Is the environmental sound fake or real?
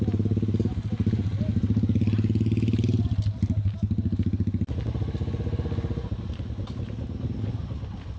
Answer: real